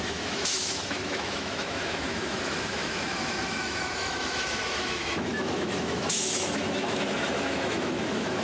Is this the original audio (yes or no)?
no